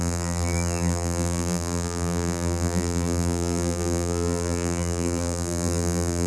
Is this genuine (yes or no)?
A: no